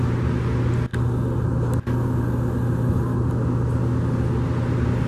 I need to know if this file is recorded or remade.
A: recorded